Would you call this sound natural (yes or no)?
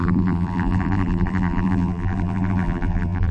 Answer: no